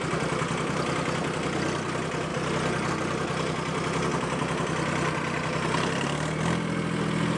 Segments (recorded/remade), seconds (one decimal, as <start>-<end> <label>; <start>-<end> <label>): 0.0-7.4 recorded